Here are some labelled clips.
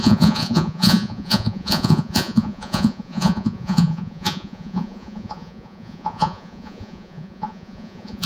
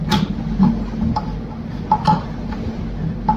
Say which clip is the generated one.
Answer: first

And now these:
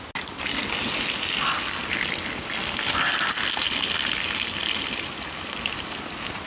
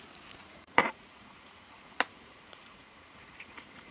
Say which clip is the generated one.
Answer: second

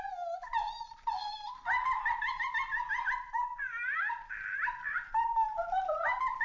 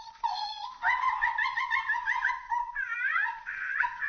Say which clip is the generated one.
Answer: second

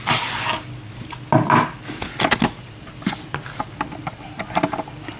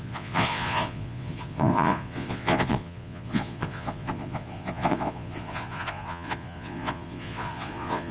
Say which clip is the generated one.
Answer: second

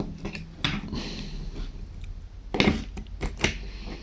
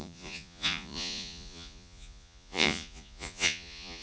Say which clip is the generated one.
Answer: second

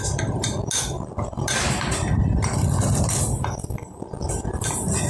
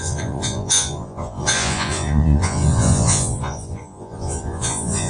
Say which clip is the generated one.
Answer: second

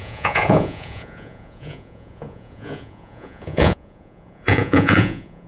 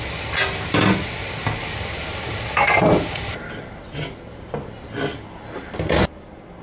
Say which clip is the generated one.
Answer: first